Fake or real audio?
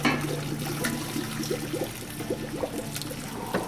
real